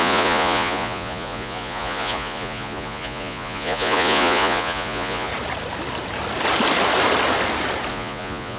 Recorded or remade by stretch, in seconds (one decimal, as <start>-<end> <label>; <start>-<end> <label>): 0.0-5.3 remade; 5.3-7.9 recorded; 7.9-8.6 remade